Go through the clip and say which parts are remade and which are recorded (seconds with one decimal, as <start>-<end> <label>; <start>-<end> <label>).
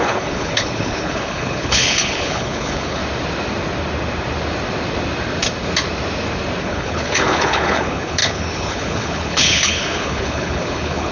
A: 0.0-3.0 remade; 3.0-6.6 recorded; 6.6-11.1 remade